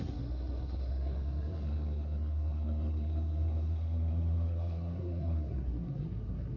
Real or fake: fake